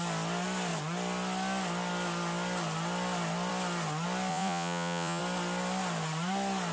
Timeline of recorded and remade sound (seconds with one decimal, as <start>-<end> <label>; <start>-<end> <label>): 0.0-4.3 recorded; 4.3-5.2 remade; 5.2-6.7 recorded